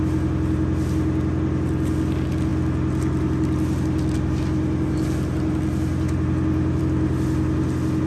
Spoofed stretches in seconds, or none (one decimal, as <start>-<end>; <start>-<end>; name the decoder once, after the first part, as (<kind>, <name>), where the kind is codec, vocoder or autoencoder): none